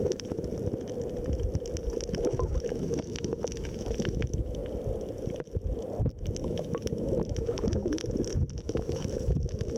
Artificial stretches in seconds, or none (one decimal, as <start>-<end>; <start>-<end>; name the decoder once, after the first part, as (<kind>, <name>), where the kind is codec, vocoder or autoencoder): 0.0-0.5 (autoencoder, DAC-VAE); 2.1-4.6; 6.4-8.0; 8.6-9.8